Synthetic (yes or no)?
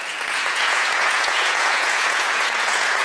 yes